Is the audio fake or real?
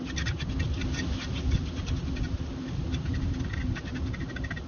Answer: real